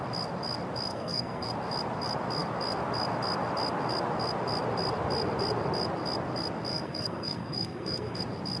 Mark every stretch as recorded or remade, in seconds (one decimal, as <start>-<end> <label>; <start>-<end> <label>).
0.0-0.9 recorded; 0.9-1.5 remade; 1.5-6.7 recorded; 6.7-8.2 remade; 8.2-8.6 recorded